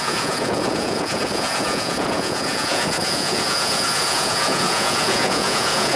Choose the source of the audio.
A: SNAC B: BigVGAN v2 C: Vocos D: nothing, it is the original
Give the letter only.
C